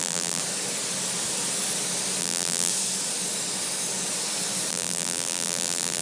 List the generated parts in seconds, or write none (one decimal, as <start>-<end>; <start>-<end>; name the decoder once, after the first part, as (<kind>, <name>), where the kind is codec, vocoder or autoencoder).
0.0-0.4 (vocoder, BigVGAN v2); 2.2-2.7; 4.7-6.0